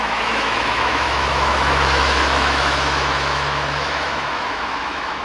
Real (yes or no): no